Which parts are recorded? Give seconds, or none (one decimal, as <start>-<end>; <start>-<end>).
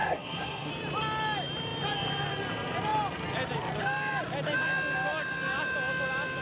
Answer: 0.7-6.4